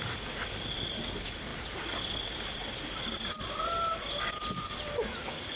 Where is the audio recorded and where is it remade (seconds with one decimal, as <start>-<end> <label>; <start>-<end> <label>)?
0.0-5.6 recorded